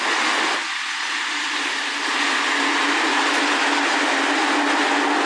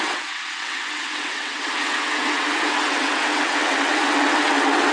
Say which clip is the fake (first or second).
second